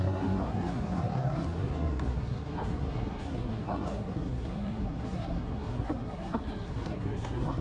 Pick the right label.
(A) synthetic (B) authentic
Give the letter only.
A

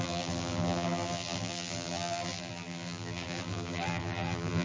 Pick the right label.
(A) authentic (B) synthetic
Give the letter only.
B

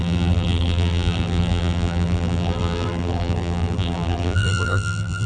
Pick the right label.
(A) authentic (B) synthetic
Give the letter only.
B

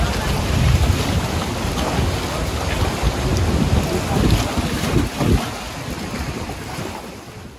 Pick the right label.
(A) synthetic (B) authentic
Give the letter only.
B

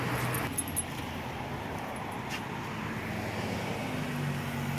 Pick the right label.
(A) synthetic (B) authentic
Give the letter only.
B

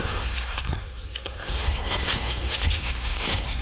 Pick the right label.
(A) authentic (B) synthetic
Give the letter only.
B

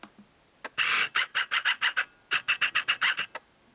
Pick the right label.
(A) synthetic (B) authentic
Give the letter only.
B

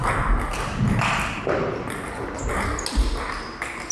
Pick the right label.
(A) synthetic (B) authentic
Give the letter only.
B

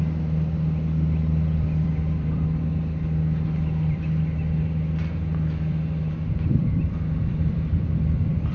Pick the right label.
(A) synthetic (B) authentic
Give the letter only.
A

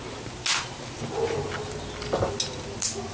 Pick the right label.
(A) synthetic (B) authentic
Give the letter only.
B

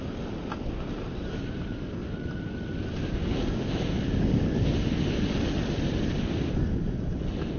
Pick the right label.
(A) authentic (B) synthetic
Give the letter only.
A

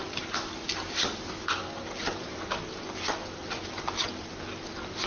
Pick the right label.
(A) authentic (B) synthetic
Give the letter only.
A